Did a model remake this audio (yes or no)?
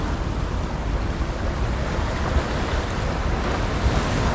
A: no